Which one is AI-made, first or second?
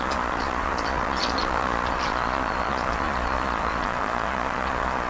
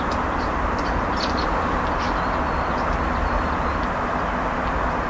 first